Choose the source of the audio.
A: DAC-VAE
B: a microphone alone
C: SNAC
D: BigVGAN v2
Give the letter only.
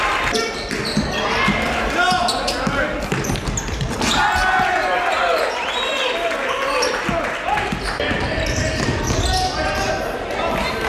B